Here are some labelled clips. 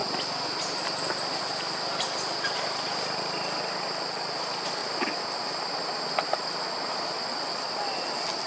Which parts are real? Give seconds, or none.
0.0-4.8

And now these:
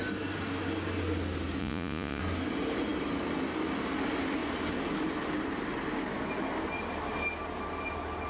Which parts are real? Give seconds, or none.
0.0-1.6; 2.2-8.3

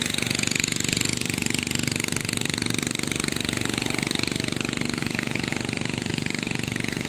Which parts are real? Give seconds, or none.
1.1-5.0; 5.5-6.1

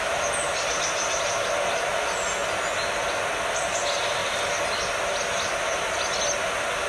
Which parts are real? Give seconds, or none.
0.0-6.9

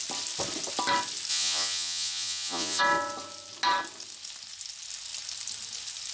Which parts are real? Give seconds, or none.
0.0-1.3; 2.8-6.1

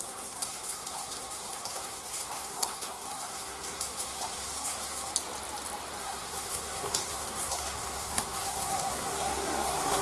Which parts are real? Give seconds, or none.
5.1-6.0

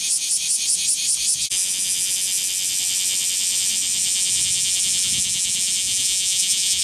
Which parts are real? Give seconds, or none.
0.0-5.8